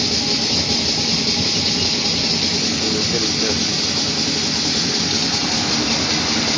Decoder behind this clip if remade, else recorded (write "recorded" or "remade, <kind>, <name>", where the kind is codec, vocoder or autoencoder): recorded